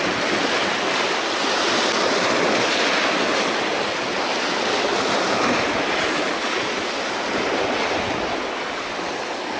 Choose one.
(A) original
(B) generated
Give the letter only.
A